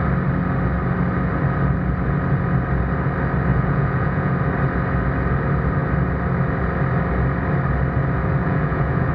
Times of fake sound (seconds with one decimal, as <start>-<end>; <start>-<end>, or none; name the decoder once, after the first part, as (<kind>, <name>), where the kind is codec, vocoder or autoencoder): 3.5-4.3 (vocoder, Vocos); 8.4-9.1